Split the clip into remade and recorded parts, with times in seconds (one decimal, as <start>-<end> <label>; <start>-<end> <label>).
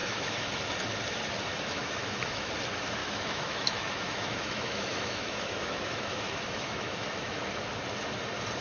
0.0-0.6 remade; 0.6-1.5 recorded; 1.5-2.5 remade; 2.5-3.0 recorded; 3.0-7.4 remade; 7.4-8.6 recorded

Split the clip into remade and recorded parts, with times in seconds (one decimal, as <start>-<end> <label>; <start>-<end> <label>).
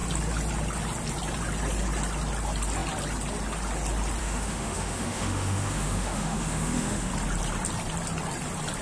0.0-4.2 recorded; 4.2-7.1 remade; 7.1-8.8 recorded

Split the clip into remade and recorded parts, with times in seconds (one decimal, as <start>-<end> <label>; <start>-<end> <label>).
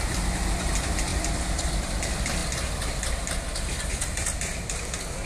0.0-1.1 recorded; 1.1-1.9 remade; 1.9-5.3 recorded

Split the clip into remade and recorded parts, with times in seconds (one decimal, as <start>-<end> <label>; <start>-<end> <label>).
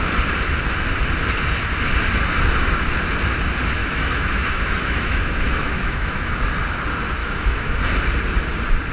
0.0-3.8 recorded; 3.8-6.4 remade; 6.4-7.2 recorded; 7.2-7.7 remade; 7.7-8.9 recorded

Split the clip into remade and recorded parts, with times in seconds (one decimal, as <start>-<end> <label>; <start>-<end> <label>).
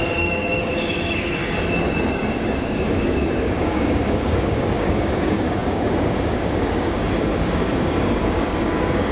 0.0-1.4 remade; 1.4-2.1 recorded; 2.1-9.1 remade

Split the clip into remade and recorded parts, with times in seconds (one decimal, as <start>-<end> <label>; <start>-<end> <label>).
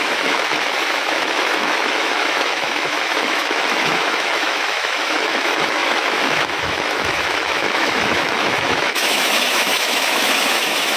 0.0-11.0 remade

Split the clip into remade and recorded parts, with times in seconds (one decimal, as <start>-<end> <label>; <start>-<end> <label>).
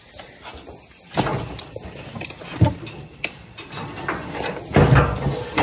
0.0-5.6 recorded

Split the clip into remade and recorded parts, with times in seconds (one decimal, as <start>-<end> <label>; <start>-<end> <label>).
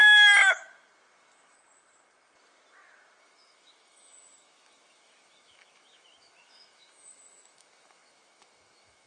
0.0-3.2 recorded; 3.2-9.1 remade